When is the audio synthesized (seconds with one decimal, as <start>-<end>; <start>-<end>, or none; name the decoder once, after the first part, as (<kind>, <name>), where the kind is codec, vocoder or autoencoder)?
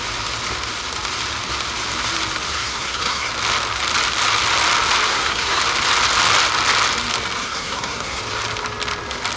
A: 2.5-3.3 (codec, SNAC); 5.1-5.6; 7.4-8.2